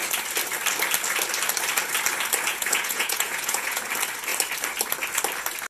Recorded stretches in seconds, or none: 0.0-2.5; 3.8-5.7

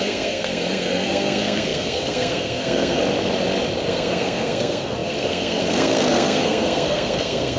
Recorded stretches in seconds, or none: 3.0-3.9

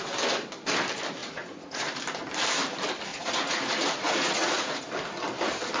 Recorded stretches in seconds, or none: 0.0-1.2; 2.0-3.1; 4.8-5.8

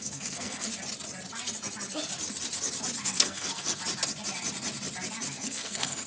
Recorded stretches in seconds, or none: 0.7-3.0; 3.8-5.3

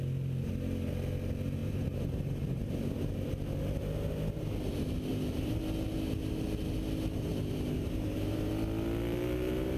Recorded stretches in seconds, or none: 0.0-1.6; 2.8-5.1; 5.6-7.3; 8.5-9.8